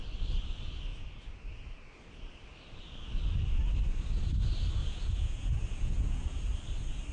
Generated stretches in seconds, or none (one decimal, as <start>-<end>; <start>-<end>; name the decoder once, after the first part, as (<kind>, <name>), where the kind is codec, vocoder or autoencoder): 4.8-6.4 (vocoder, Vocos)